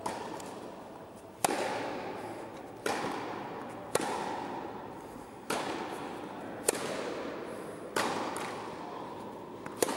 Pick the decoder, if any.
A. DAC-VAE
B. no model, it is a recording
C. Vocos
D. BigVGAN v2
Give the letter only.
B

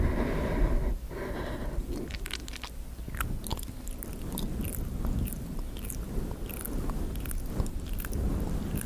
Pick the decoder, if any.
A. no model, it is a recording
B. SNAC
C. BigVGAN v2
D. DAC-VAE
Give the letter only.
A